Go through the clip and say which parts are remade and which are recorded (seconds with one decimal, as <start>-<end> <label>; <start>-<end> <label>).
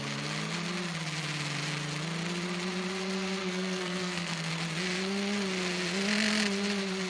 0.0-3.4 recorded; 3.4-4.5 remade; 4.5-7.1 recorded